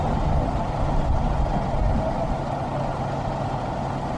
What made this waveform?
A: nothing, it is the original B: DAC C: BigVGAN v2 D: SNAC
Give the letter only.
A